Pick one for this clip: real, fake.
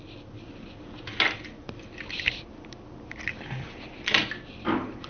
real